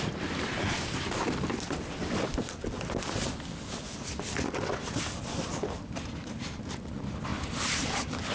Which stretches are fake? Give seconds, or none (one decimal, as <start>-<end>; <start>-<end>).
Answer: 7.3-8.3